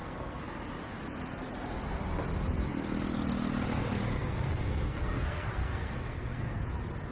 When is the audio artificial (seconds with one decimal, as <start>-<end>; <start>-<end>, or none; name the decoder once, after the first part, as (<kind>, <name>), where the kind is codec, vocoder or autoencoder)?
0.0-0.6 (codec, SNAC); 4.1-6.6